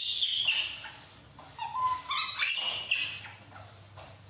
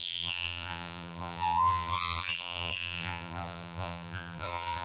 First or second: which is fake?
second